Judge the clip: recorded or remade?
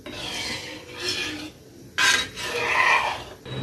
recorded